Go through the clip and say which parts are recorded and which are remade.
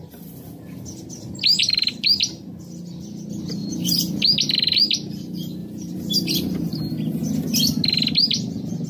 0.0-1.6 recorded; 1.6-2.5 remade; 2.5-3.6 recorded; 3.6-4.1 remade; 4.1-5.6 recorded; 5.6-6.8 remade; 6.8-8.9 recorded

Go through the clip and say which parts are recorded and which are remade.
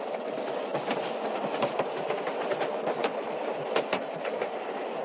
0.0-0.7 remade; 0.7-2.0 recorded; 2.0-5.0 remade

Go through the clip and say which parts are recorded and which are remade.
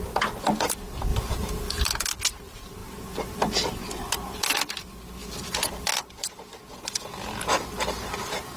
0.0-1.1 recorded; 1.1-1.9 remade; 1.9-2.8 recorded; 2.8-4.4 remade; 4.4-5.2 recorded; 5.2-5.9 remade; 5.9-8.6 recorded